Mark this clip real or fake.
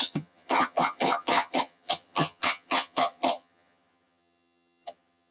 fake